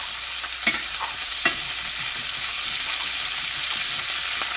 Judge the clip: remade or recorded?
recorded